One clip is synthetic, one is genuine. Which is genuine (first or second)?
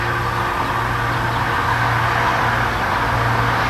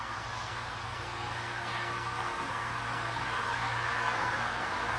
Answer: first